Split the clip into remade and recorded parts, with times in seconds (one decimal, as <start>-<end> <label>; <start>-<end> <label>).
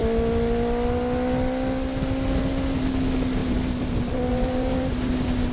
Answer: 0.0-3.4 recorded; 3.4-3.9 remade; 3.9-4.3 recorded; 4.3-5.1 remade; 5.1-5.5 recorded